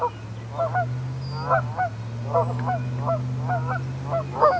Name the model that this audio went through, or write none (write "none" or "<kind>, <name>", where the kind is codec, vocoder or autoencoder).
none